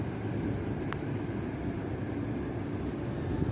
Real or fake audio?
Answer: real